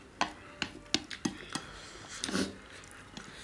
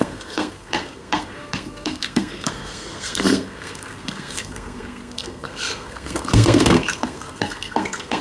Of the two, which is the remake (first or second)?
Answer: second